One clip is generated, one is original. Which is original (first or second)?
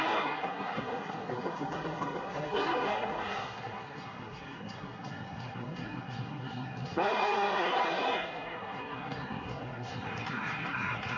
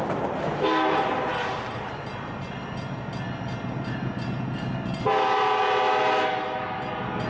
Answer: second